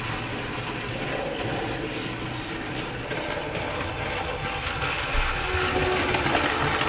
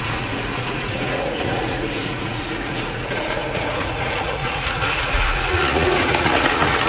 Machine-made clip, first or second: second